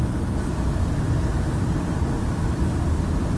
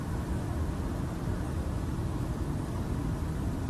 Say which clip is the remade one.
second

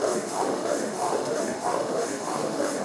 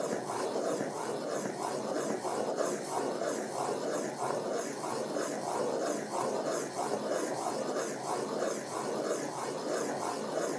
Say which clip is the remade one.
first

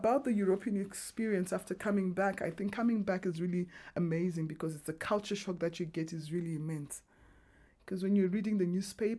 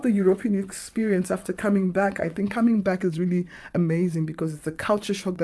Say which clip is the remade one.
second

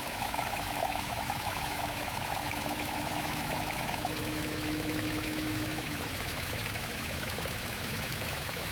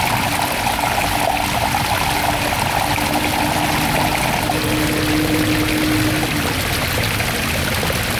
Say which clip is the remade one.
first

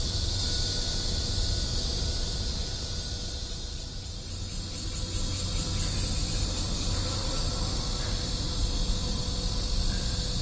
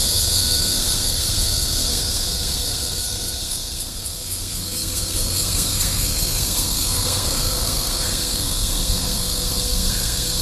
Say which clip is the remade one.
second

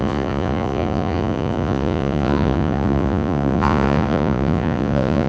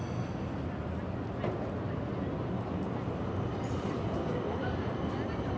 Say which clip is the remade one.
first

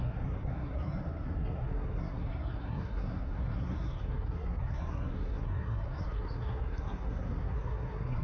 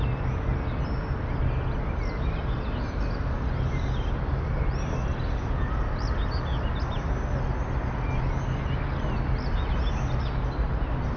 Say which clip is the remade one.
first